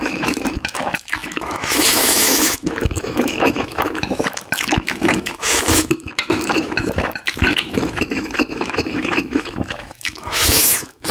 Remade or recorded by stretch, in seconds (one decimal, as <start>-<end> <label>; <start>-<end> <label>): 0.0-11.1 remade